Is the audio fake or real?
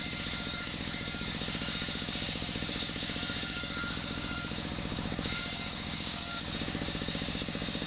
fake